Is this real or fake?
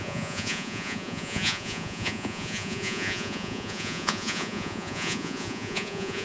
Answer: fake